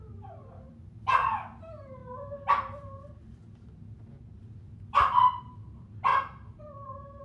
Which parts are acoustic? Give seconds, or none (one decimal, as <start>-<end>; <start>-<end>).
none